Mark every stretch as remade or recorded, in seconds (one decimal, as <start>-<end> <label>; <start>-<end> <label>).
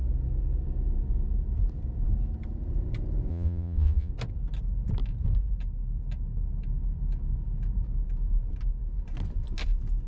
0.0-3.3 recorded; 3.3-4.1 remade; 4.1-10.1 recorded